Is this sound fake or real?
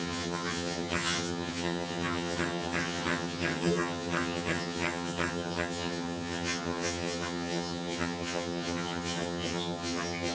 fake